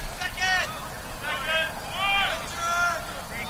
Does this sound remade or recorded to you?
recorded